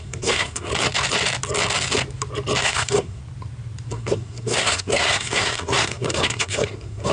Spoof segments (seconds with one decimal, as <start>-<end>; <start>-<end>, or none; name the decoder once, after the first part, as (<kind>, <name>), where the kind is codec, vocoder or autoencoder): 0.0-0.7 (codec, SNAC); 2.6-3.2; 3.9-7.1